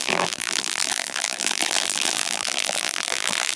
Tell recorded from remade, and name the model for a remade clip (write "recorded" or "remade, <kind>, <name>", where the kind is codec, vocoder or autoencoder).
remade, vocoder, BigVGAN v2